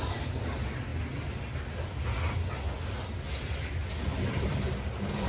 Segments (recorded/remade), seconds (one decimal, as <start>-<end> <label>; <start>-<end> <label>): 0.0-5.3 recorded